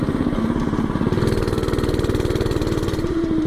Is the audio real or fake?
real